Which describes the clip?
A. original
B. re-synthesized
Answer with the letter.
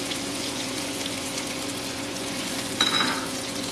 B